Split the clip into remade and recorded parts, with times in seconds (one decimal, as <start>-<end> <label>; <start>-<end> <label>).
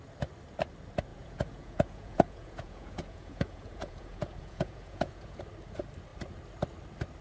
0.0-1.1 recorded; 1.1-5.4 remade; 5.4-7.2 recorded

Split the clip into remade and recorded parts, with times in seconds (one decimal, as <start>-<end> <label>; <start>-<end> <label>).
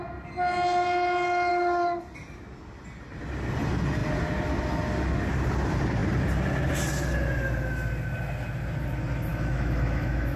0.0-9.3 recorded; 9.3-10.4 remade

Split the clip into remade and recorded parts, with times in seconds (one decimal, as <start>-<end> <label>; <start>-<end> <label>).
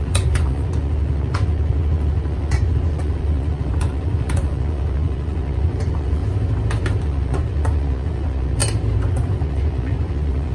0.0-6.2 remade; 6.2-7.0 recorded; 7.0-8.6 remade; 8.6-9.1 recorded; 9.1-10.5 remade